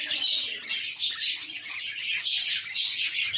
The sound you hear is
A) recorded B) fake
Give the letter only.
A